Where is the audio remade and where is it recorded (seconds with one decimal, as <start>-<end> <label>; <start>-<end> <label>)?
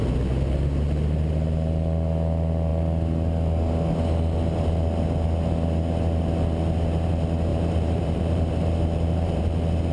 0.0-7.5 recorded; 7.5-9.4 remade; 9.4-9.9 recorded